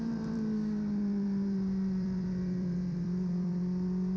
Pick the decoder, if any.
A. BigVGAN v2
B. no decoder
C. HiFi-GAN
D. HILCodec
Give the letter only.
A